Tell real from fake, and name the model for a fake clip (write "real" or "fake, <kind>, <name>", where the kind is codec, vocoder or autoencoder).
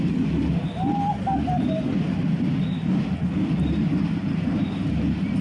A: real